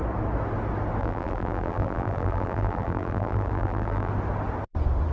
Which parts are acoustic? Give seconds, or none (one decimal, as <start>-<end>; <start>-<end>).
0.0-1.0; 4.1-5.1